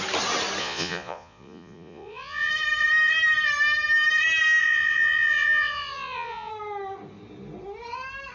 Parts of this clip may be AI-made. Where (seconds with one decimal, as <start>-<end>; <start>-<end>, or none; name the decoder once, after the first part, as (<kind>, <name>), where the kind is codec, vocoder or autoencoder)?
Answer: 0.6-2.5 (vocoder, Vocos); 4.6-6.5